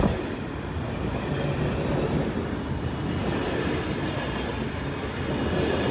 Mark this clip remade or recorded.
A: recorded